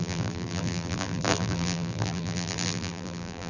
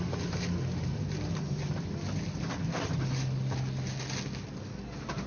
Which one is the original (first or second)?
second